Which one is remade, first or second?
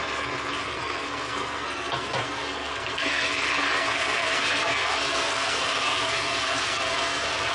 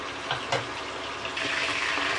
first